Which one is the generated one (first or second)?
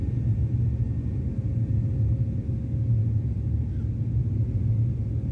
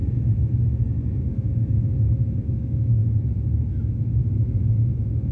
second